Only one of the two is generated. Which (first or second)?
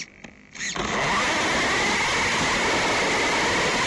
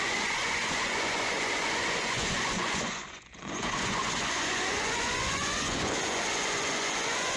second